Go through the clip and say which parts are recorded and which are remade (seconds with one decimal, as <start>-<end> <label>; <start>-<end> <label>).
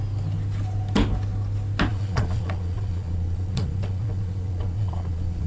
0.0-1.9 recorded; 1.9-5.5 remade